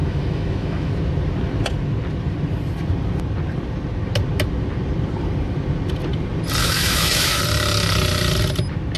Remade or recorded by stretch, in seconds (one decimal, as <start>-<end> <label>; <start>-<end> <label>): 0.0-0.9 remade; 0.9-6.6 recorded; 6.6-7.4 remade; 7.4-9.0 recorded